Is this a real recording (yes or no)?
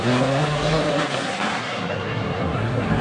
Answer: no